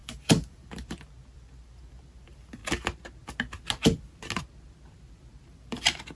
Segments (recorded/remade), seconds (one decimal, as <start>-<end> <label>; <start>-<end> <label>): 0.0-2.6 remade; 2.6-4.7 recorded; 4.7-6.2 remade